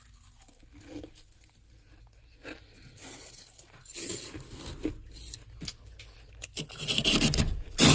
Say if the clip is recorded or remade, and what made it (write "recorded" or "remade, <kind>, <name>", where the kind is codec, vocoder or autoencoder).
recorded